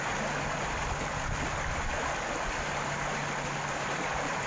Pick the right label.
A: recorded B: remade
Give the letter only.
A